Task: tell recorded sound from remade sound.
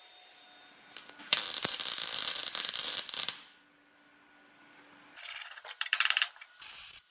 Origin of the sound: remade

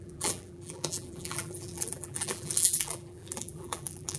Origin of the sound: remade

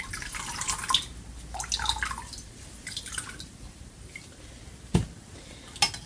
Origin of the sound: recorded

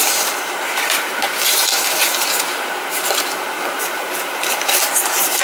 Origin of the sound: remade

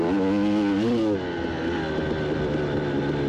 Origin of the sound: recorded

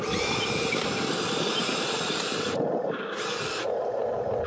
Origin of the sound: remade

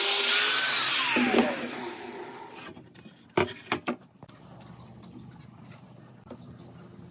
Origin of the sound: recorded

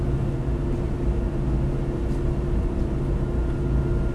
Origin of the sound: recorded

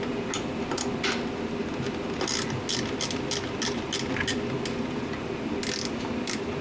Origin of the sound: recorded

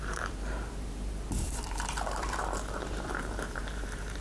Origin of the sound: remade